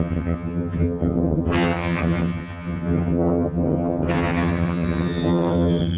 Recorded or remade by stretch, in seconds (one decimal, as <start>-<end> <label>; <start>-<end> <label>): 0.0-6.0 remade